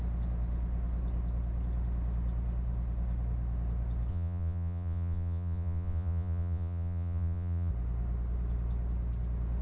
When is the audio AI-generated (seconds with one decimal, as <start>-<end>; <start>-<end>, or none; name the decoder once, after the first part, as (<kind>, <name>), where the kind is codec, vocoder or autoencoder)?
4.1-7.7 (vocoder, Vocos)